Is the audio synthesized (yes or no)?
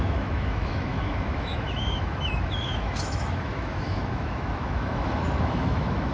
yes